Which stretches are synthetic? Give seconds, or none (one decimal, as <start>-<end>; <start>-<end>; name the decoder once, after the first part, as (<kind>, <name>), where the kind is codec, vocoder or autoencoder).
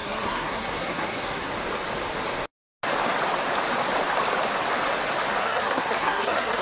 0.0-1.5 (codec, SNAC); 5.4-6.6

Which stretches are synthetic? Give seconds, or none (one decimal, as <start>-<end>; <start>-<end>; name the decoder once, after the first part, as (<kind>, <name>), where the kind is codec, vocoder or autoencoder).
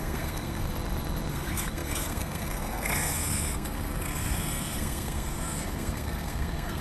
0.0-0.7 (codec, SNAC); 1.3-6.8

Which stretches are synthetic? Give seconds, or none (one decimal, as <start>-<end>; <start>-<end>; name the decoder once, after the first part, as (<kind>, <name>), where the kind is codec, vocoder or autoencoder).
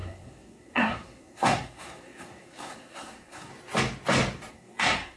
0.0-3.5 (codec, SNAC); 4.5-5.2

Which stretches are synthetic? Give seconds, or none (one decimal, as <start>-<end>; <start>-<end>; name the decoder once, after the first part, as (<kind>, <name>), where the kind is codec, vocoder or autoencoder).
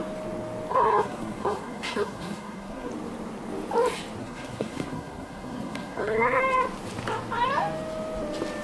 0.7-2.9 (codec, SNAC); 4.2-6.4